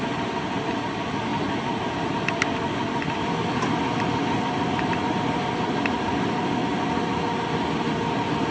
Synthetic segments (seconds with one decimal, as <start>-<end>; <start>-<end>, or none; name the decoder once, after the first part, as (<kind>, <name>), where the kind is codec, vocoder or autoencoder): none